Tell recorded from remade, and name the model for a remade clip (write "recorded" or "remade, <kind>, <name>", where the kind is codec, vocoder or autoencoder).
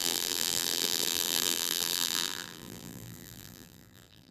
remade, vocoder, BigVGAN v2